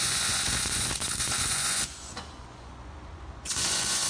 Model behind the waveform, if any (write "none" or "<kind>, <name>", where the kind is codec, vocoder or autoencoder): vocoder, Vocos